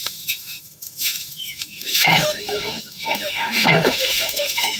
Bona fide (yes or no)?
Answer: no